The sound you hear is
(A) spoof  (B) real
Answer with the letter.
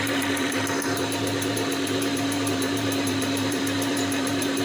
A